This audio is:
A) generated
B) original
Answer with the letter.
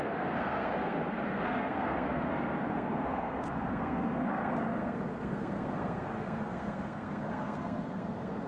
A